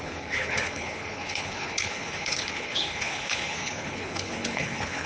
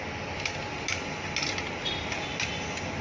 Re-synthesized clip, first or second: first